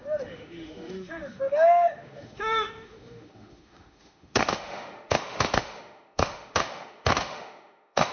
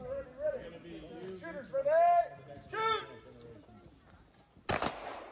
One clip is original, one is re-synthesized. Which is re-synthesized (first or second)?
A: first